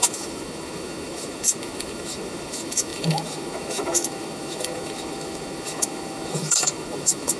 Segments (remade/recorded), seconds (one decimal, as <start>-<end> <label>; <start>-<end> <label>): 0.0-7.4 remade